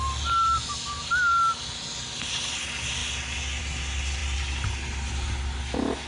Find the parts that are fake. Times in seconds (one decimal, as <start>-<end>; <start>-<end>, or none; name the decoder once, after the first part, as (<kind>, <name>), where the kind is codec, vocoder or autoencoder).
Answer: none